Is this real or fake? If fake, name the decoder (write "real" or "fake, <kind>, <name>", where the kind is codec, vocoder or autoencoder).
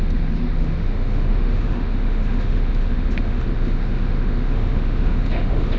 fake, autoencoder, DAC-VAE